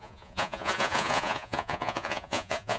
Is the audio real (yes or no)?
no